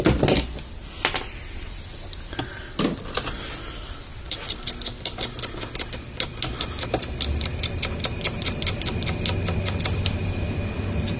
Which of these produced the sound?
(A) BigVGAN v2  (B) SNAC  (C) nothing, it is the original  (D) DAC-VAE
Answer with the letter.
C